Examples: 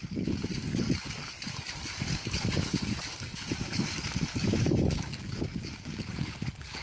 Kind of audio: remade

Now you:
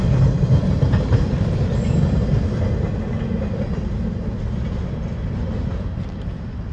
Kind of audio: recorded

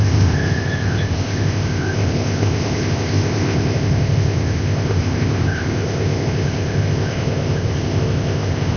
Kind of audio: remade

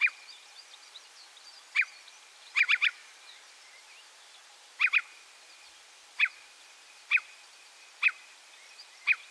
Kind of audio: remade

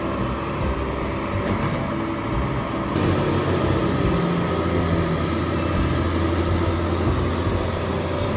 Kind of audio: recorded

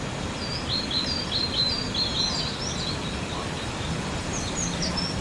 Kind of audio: recorded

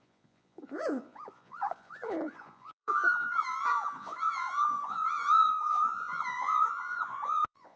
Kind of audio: remade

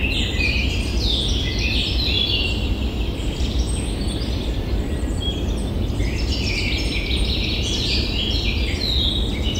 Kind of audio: recorded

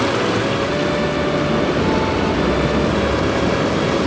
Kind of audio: recorded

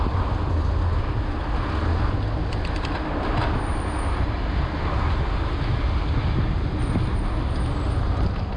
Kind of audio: recorded